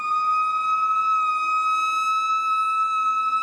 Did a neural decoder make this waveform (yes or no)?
no